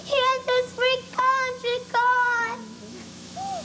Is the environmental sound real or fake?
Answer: fake